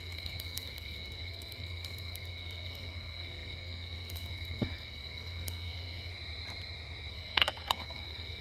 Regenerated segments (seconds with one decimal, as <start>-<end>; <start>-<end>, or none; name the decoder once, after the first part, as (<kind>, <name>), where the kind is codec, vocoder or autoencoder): 0.0-6.1 (codec, SNAC); 7.1-8.4